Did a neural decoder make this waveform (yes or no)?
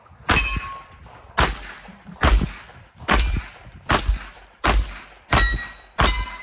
no